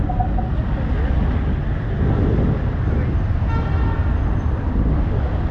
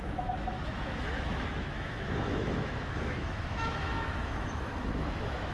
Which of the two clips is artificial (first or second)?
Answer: second